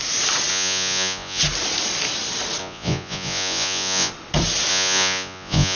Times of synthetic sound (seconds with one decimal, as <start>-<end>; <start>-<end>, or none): 0.5-1.4; 2.6-4.1; 4.7-5.8